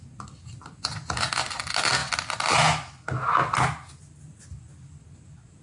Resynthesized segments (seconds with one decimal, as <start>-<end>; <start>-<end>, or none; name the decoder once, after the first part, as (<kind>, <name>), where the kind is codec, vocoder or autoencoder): none